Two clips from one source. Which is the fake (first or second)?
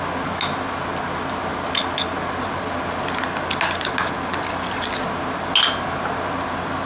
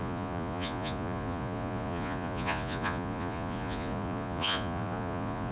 second